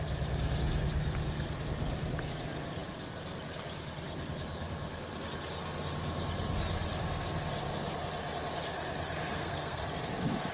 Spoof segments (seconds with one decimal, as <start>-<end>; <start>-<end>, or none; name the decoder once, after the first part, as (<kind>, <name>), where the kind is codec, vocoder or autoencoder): 9.3-9.8 (codec, SNAC)